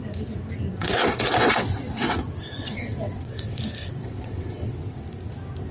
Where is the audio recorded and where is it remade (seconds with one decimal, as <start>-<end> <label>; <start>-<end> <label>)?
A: 0.0-0.7 recorded; 0.7-2.2 remade; 2.2-2.6 recorded; 2.6-3.6 remade; 3.6-4.0 recorded; 4.0-5.0 remade; 5.0-5.7 recorded